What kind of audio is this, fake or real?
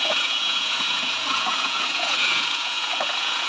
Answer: fake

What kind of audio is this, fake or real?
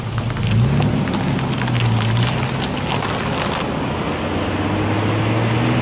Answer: real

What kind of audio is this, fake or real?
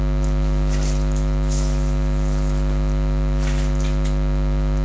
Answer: real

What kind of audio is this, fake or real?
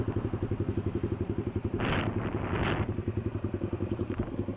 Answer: real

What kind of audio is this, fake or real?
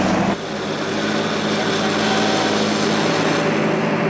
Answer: real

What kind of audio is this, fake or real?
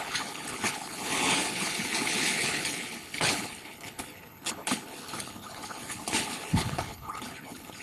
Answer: fake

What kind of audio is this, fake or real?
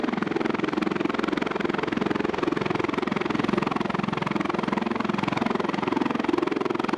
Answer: real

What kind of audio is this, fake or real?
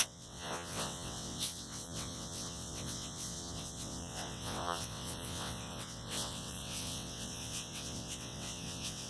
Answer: fake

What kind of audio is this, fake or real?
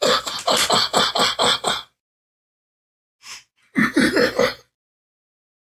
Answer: real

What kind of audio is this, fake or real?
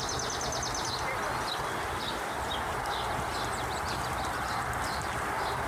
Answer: real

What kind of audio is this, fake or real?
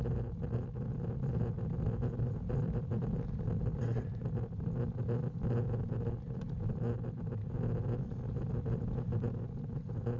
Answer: real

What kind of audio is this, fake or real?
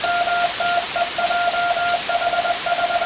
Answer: real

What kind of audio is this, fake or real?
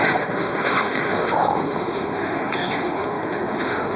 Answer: fake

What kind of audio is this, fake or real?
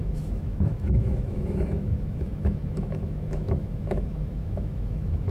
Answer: fake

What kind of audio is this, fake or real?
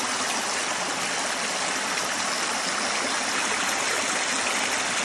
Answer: real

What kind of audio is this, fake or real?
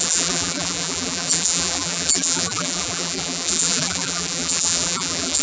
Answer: fake